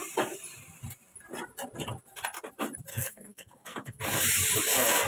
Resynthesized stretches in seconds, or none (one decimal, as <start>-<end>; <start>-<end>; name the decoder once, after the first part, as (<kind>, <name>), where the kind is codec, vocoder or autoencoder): 2.9-4.0 (codec, SNAC)